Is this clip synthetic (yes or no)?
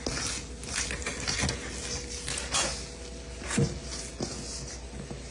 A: no